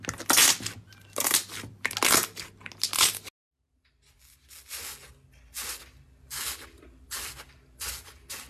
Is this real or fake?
real